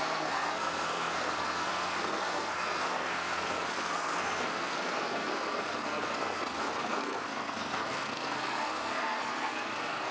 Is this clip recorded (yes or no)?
no